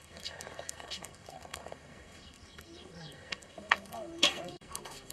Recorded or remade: remade